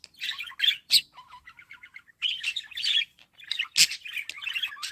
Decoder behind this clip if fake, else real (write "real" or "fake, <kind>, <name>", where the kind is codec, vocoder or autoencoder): real